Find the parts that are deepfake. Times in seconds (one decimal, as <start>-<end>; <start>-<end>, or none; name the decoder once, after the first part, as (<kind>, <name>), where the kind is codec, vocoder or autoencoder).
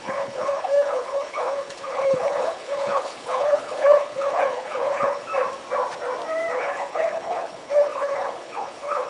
0.0-5.3 (codec, HILCodec); 6.5-9.1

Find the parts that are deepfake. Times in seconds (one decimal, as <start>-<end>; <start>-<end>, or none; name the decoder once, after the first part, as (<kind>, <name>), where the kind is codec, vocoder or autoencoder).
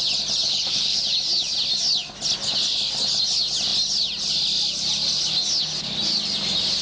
0.4-1.0 (codec, HILCodec)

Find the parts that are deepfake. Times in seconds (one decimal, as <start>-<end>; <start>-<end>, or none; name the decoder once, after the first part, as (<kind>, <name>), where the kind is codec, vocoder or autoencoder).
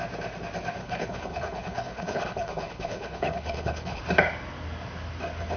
0.8-4.0 (codec, HILCodec)